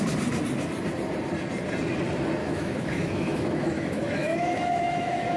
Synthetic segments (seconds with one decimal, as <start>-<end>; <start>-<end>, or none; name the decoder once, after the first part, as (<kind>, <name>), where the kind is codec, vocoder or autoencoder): 2.4-5.4 (autoencoder, DAC-VAE)